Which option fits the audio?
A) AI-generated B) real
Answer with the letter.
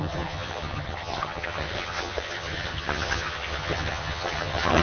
A